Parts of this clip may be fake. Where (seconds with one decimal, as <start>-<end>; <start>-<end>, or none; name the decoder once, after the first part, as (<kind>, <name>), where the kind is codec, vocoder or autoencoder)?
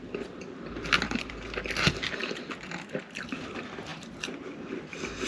0.0-2.2 (vocoder, BigVGAN v2); 3.0-5.3